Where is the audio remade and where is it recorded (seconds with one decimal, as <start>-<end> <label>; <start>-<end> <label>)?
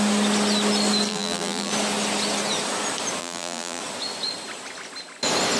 0.0-1.1 recorded; 1.1-1.7 remade; 1.7-3.2 recorded; 3.2-3.8 remade; 3.8-5.6 recorded